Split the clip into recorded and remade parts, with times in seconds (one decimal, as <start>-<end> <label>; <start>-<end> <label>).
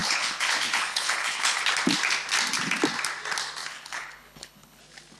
0.0-1.6 remade; 1.6-3.6 recorded; 3.6-4.8 remade; 4.8-5.2 recorded